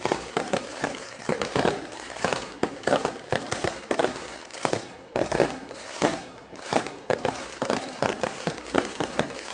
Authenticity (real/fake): fake